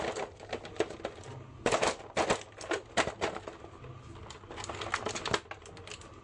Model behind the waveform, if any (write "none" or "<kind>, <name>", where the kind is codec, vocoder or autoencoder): none